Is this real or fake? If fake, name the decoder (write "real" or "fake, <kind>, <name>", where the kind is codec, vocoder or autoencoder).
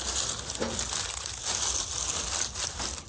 real